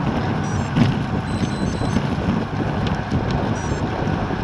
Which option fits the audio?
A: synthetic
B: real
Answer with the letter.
B